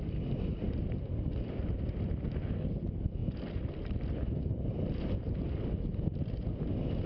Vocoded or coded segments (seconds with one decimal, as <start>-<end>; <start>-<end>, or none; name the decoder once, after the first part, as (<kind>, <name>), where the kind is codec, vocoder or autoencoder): none